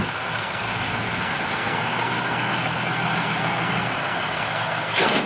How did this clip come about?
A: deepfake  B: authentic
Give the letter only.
A